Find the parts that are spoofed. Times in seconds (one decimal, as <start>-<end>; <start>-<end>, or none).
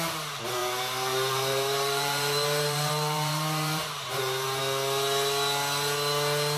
0.6-4.6